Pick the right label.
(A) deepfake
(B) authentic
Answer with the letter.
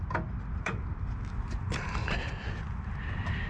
B